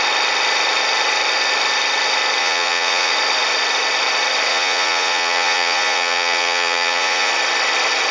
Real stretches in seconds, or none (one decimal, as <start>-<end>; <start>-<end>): 0.0-2.4; 3.1-4.5; 7.3-8.1